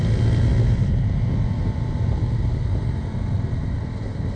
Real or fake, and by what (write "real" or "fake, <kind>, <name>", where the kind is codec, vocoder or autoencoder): real